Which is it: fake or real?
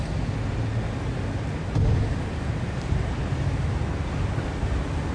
real